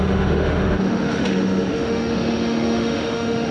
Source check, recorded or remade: remade